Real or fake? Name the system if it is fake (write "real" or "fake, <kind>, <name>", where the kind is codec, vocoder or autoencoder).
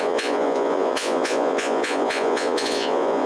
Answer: fake, vocoder, Vocos